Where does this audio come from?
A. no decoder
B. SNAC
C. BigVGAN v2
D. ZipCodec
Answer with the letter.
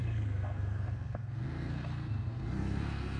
B